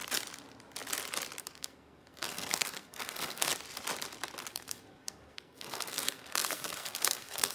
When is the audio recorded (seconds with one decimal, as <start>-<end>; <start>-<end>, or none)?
0.0-1.4; 3.5-4.5